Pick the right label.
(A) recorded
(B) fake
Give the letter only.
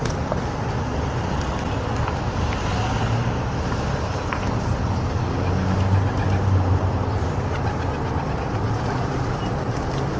A